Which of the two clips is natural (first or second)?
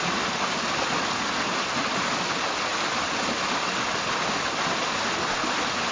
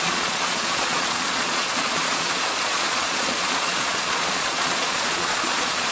first